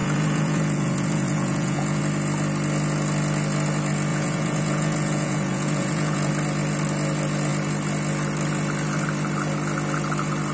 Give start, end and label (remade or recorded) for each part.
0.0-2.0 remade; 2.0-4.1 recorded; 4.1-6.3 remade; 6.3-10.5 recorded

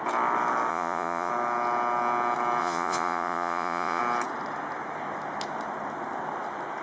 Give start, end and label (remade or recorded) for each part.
0.0-0.7 recorded; 0.7-1.3 remade; 1.3-2.6 recorded; 2.6-4.0 remade; 4.0-6.8 recorded

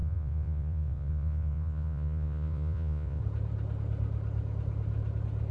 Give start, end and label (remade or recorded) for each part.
0.0-3.2 remade; 3.2-5.5 recorded

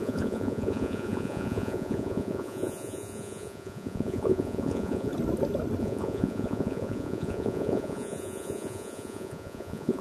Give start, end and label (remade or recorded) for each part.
0.0-5.1 remade; 5.1-5.8 recorded; 5.8-10.0 remade

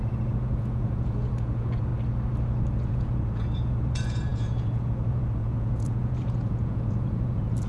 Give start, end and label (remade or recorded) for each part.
0.0-1.9 remade; 1.9-2.9 recorded; 2.9-7.7 remade

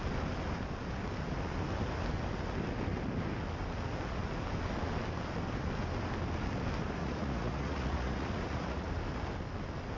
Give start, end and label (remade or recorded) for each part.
0.0-7.0 recorded; 7.0-8.9 remade; 8.9-10.0 recorded

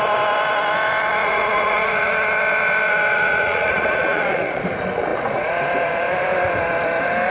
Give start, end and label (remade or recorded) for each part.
0.0-1.2 recorded; 1.2-2.1 remade; 2.1-3.1 recorded; 3.1-4.6 remade; 4.6-7.3 recorded

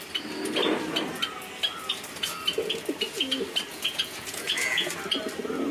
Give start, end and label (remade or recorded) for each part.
0.0-3.7 recorded; 3.7-4.9 remade; 4.9-5.7 recorded